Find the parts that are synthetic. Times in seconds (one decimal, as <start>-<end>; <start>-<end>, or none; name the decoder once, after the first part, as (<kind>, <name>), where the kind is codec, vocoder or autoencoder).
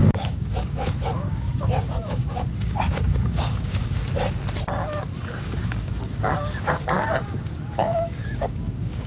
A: 0.0-4.0 (codec, DAC); 5.4-9.1